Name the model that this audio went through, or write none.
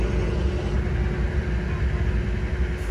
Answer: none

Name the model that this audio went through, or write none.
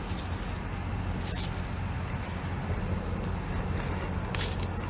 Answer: none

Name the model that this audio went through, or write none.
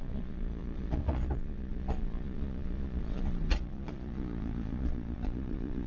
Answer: vocoder, Vocos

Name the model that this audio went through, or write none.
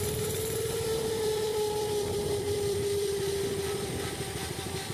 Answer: vocoder, BigVGAN v2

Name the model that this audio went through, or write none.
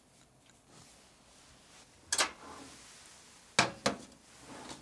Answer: none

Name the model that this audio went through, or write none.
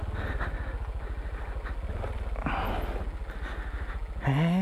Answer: none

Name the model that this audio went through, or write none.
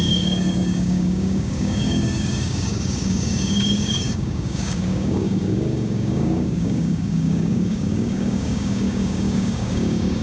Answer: codec, DAC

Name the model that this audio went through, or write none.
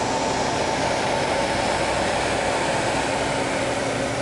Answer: none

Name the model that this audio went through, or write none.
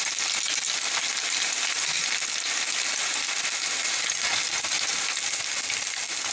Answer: none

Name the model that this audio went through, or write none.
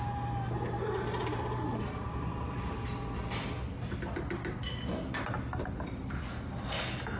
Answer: none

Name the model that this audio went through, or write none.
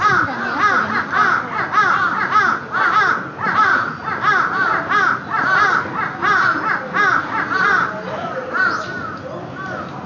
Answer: none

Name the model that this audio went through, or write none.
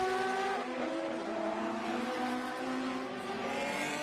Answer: vocoder, BigVGAN v2